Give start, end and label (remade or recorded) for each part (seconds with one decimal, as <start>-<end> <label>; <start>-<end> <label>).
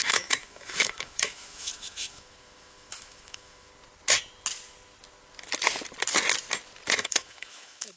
0.0-3.7 remade; 3.7-7.0 recorded; 7.0-8.0 remade